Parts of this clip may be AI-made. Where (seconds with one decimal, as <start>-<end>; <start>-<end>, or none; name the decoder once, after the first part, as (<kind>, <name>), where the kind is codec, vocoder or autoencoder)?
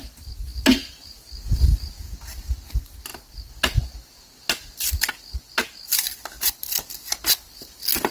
none